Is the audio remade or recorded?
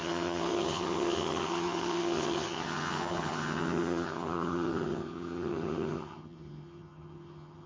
remade